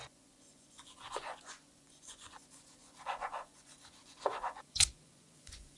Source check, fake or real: fake